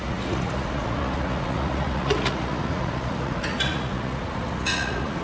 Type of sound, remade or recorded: remade